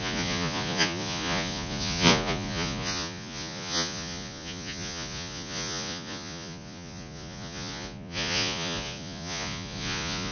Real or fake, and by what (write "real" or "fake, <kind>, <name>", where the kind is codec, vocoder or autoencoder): fake, vocoder, Vocos